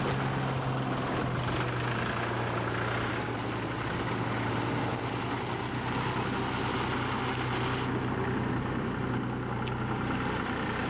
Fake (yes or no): no